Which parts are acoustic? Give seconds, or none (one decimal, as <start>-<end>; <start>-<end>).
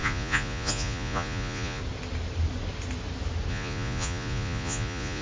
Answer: 1.8-3.5